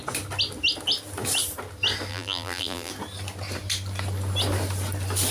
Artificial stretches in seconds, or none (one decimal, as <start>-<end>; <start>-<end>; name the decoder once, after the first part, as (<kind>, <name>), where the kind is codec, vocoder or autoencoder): 2.1-2.9 (vocoder, BigVGAN v2)